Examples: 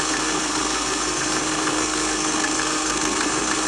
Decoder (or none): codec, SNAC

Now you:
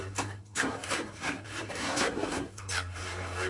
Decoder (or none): codec, SNAC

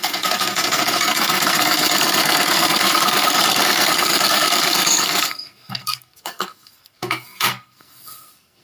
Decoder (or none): codec, SNAC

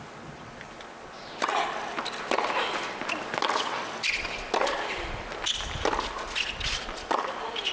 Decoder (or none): none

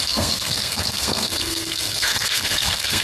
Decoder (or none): codec, SNAC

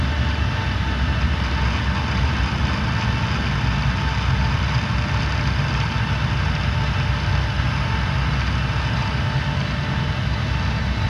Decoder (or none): none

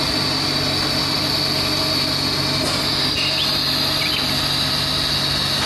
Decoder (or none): none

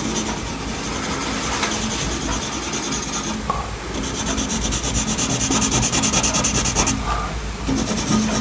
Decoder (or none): none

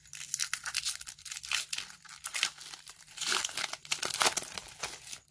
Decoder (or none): none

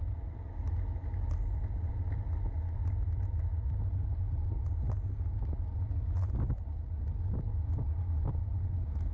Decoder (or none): none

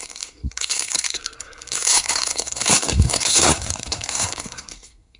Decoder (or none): codec, SNAC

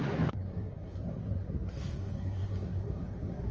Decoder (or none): codec, SNAC